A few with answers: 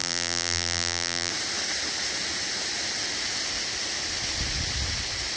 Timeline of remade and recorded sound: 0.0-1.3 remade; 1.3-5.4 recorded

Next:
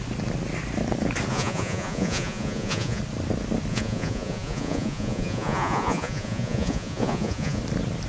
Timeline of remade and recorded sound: 0.0-1.3 recorded; 1.3-3.0 remade; 3.0-3.7 recorded; 3.7-7.6 remade; 7.6-8.1 recorded

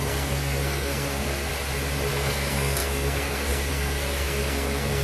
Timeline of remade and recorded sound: 0.0-1.5 remade; 1.5-2.1 recorded; 2.1-5.0 remade

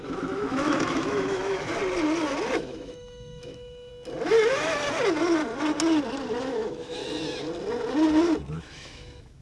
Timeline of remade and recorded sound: 0.0-1.8 remade; 1.8-2.5 recorded; 2.5-3.9 remade; 3.9-6.4 recorded; 6.4-7.0 remade; 7.0-8.5 recorded; 8.5-9.4 remade

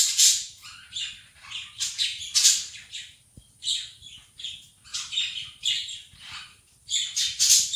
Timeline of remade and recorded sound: 0.0-0.6 remade; 0.6-1.4 recorded; 1.4-7.8 remade

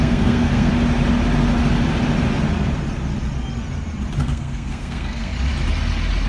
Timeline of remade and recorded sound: 0.0-0.7 remade; 0.7-4.2 recorded; 4.2-5.3 remade; 5.3-6.3 recorded

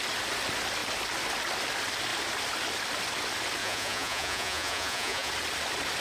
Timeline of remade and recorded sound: 0.0-3.6 recorded; 3.6-5.3 remade; 5.3-6.0 recorded